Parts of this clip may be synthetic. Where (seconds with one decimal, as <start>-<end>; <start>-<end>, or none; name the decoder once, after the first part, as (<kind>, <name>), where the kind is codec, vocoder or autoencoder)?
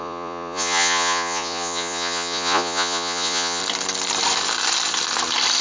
0.0-3.6 (vocoder, Vocos)